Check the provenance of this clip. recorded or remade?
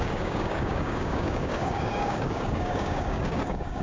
remade